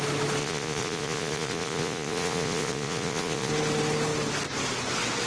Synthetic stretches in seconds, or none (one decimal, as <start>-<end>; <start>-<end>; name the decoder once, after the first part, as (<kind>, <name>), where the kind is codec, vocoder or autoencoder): 0.4-3.5 (vocoder, Vocos)